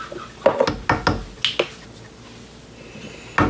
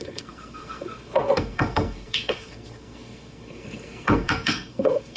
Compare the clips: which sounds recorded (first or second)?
first